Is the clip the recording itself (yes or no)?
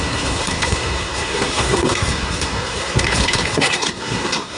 no